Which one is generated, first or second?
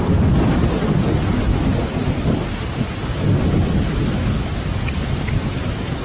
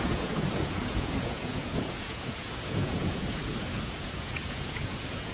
second